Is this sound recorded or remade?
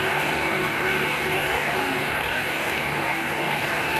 remade